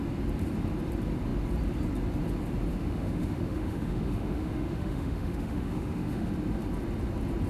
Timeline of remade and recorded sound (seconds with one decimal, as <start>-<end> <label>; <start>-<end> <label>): 0.0-2.7 recorded; 2.7-6.3 remade; 6.3-7.5 recorded